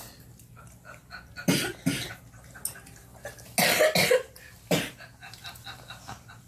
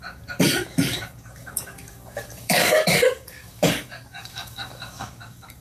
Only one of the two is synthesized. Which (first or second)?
second